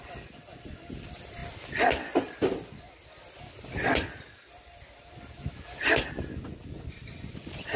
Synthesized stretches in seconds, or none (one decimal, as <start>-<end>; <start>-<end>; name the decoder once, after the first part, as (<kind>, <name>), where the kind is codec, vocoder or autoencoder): 0.0-1.4 (vocoder, BigVGAN v2); 6.1-7.8